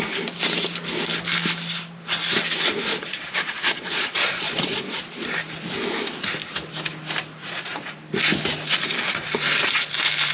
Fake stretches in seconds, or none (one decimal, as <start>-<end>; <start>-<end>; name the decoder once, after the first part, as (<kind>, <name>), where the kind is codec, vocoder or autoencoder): 2.9-5.0 (vocoder, Vocos); 7.4-7.9